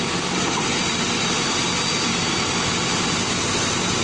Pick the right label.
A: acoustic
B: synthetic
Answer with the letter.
A